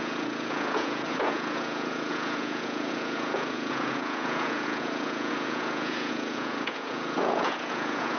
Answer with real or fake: fake